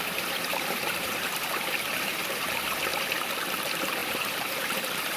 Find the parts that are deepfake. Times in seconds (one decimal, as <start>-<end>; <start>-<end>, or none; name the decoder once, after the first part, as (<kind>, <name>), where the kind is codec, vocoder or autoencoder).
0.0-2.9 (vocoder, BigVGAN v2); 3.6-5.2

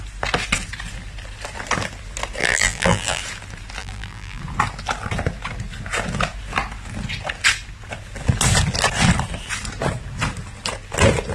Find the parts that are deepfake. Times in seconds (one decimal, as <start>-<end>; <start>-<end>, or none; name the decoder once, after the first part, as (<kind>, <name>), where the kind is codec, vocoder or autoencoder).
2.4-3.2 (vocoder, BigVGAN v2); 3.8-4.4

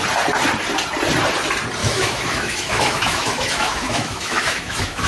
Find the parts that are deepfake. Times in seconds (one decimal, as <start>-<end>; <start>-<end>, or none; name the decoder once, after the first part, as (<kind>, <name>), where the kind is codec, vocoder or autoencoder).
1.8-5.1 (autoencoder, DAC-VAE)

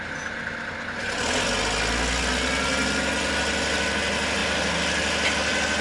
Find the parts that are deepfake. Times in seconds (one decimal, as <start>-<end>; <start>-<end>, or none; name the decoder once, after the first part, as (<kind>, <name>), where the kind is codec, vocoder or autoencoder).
none

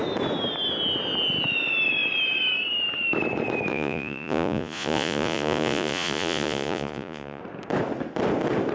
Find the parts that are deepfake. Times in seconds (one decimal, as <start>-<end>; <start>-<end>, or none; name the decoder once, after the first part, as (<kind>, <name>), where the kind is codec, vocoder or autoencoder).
3.7-7.4 (vocoder, Vocos)

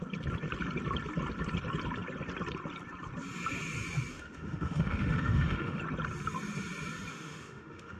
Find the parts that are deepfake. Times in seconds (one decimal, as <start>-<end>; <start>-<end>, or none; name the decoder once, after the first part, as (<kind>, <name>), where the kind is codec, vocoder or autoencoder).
4.1-5.8 (autoencoder, DAC-VAE); 7.1-8.0